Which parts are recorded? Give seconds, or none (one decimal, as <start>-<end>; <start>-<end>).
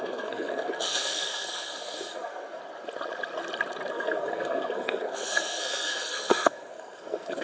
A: 2.6-3.9